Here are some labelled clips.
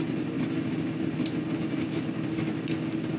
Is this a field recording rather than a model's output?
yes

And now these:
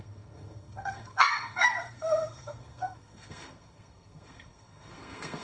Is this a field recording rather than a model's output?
no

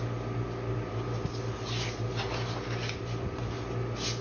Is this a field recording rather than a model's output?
yes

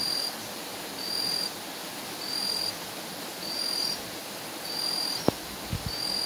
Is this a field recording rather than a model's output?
yes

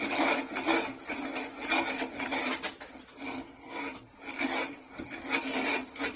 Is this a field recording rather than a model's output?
yes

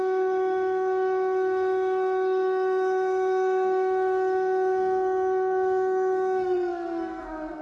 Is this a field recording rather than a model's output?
no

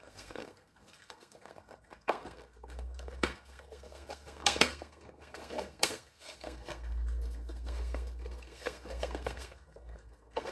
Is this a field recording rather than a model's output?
no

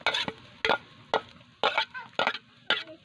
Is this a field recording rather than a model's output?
yes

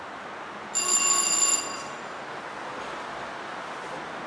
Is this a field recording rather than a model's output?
yes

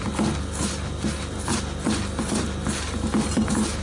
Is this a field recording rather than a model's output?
yes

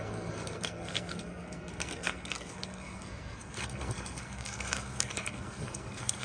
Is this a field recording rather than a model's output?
no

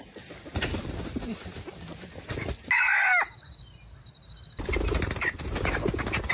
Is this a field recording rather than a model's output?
yes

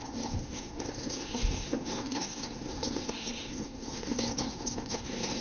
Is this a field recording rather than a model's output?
no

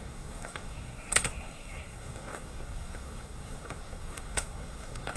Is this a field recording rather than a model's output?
no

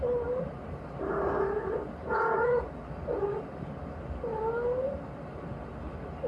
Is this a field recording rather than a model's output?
yes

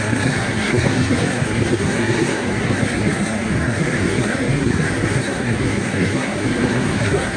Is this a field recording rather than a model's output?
no